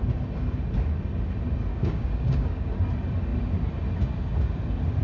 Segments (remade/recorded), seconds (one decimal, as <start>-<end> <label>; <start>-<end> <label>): 0.0-1.7 recorded; 1.7-2.7 remade; 2.7-5.0 recorded